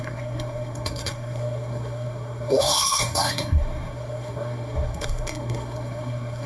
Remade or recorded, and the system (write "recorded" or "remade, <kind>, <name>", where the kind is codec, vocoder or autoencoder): remade, codec, SNAC